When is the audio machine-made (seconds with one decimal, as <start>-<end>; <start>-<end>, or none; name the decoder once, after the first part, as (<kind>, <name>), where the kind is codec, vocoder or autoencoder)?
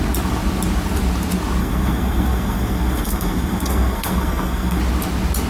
1.6-4.8 (codec, SNAC)